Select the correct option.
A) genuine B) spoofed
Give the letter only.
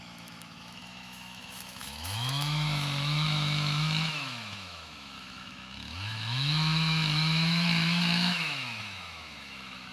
B